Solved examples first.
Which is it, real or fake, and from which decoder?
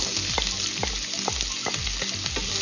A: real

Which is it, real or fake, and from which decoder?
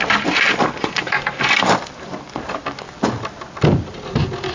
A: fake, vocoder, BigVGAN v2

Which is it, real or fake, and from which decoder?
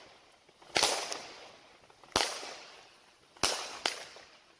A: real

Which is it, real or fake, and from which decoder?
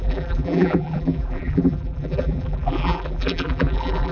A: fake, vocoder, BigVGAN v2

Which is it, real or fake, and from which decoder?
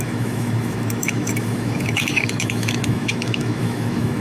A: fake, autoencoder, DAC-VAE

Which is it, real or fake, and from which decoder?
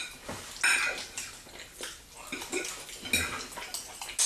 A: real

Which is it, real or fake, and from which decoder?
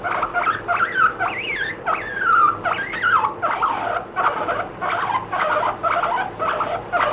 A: real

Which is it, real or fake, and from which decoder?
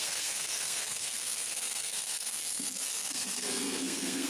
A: fake, codec, SNAC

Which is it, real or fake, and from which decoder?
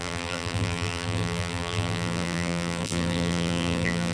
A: fake, vocoder, BigVGAN v2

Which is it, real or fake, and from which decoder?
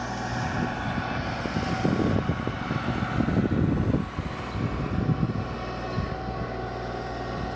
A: real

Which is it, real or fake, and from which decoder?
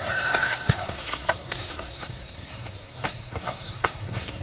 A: fake, codec, SNAC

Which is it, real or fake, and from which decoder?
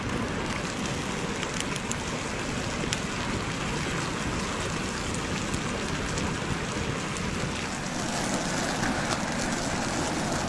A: real